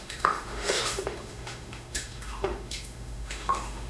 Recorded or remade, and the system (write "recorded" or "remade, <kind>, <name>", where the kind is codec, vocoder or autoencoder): remade, autoencoder, DAC-VAE